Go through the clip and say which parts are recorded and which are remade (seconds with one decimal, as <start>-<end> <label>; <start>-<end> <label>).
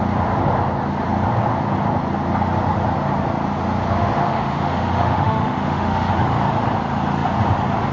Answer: 0.0-4.0 recorded; 4.0-6.1 remade; 6.1-7.9 recorded